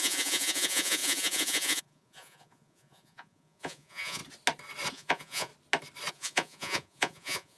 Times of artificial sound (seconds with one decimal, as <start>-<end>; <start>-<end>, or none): 0.0-4.2; 4.9-5.5; 6.1-7.6